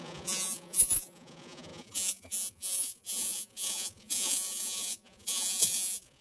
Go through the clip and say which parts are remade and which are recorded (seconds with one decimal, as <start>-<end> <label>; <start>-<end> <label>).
0.0-6.2 remade